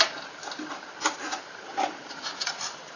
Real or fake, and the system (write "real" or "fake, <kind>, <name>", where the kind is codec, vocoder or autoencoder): fake, vocoder, BigVGAN v2